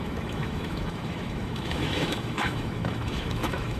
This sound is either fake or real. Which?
fake